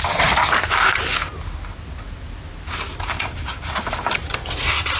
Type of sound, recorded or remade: recorded